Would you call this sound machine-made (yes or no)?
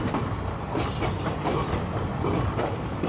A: no